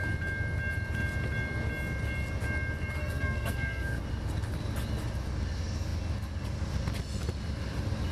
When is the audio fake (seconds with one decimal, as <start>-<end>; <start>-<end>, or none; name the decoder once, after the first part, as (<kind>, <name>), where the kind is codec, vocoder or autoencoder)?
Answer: 3.0-4.0 (codec, SNAC)